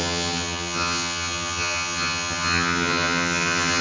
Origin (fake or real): fake